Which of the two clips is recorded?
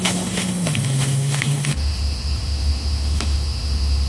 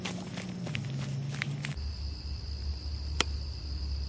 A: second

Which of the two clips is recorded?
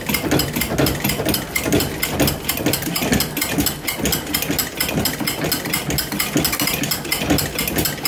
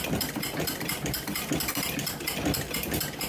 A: first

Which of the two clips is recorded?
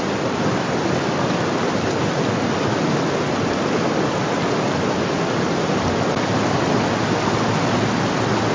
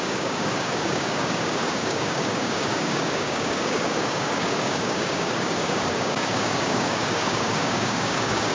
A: first